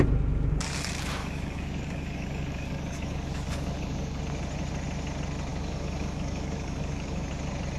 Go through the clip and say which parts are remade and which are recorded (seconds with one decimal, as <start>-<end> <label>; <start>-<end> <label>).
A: 0.0-1.2 recorded; 1.2-4.2 remade; 4.2-5.5 recorded; 5.5-7.3 remade; 7.3-7.8 recorded